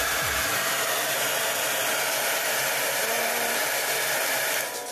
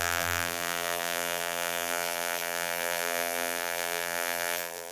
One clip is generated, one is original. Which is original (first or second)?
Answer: first